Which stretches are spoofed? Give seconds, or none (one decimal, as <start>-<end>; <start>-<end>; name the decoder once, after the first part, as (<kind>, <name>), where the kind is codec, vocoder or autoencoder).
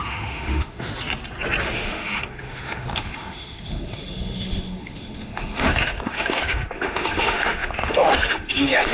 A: 0.0-0.9 (autoencoder, DAC-VAE); 1.6-8.9